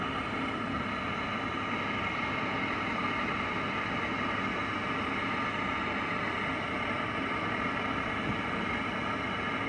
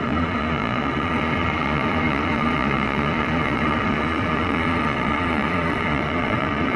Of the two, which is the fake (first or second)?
second